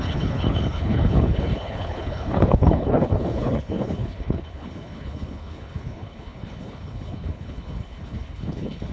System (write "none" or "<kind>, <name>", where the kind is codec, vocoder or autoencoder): codec, HILCodec